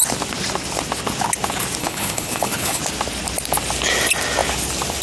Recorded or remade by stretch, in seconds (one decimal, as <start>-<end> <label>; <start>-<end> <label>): 0.0-1.8 recorded; 1.8-2.8 remade; 2.8-5.0 recorded